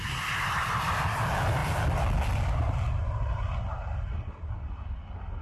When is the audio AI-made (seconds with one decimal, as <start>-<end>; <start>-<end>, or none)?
none

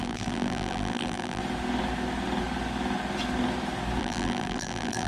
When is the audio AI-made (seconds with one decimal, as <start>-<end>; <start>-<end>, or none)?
0.0-1.4; 4.0-5.1